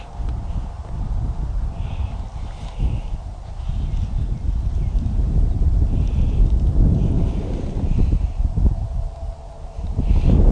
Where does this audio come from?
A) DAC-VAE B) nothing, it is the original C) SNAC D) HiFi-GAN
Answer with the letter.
B